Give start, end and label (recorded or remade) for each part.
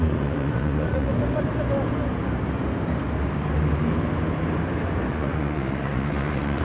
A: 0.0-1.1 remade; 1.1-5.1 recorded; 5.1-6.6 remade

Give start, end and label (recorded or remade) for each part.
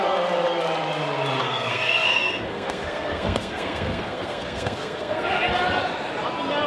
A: 0.0-1.4 recorded; 1.4-5.4 remade; 5.4-6.7 recorded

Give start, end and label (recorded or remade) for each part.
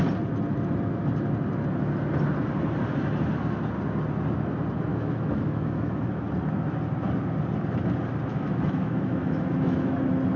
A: 0.0-4.9 recorded; 4.9-6.3 remade; 6.3-8.3 recorded; 8.3-10.0 remade; 10.0-10.4 recorded